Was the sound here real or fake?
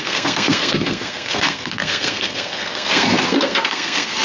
fake